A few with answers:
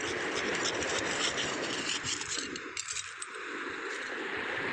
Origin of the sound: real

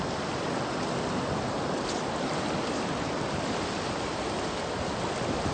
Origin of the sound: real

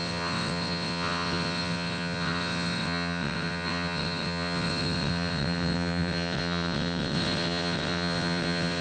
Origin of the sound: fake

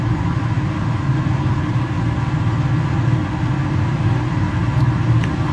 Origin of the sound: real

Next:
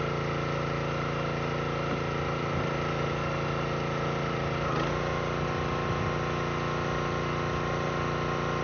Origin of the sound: real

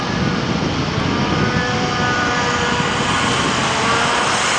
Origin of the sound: real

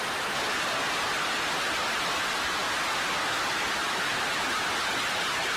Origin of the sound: real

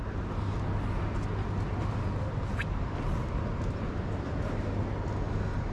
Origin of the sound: real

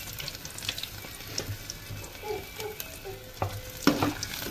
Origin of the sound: real